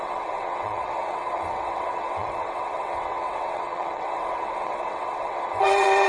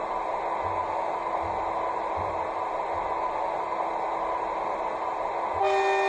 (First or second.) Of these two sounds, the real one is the second